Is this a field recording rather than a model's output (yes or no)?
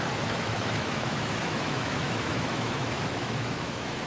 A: no